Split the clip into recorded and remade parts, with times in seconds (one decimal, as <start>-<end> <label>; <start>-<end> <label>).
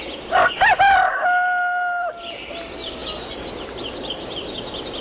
0.0-5.0 recorded